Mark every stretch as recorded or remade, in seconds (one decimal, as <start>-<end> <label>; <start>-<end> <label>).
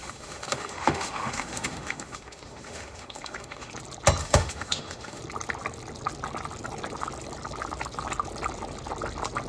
0.0-3.7 remade; 3.7-4.2 recorded; 4.2-5.2 remade; 5.2-9.5 recorded